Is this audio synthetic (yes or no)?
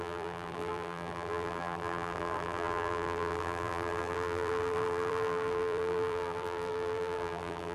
yes